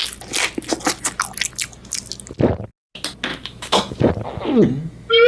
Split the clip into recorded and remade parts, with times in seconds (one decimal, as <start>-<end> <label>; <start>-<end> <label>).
0.0-3.3 recorded; 3.3-4.1 remade; 4.1-5.3 recorded